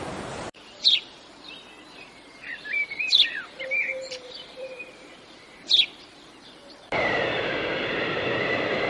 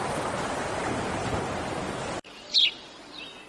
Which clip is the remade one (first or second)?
first